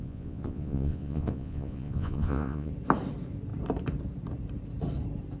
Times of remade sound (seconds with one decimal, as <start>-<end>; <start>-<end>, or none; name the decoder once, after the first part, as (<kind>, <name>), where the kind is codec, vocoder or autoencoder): 0.0-2.7 (vocoder, Vocos)